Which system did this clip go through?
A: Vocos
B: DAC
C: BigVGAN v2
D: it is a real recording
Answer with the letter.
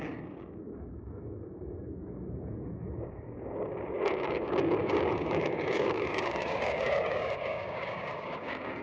B